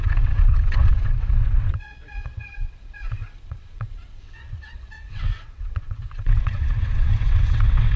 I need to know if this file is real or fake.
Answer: fake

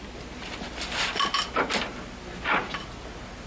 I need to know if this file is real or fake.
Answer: real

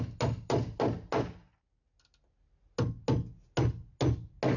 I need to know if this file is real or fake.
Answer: real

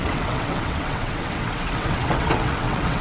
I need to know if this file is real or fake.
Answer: fake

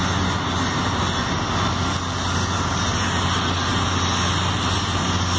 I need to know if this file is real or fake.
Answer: real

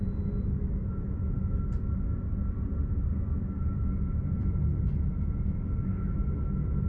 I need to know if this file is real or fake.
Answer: real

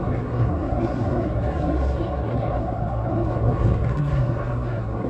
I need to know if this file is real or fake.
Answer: fake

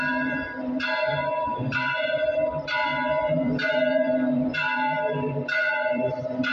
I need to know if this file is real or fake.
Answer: fake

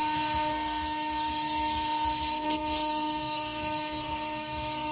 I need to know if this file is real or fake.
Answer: fake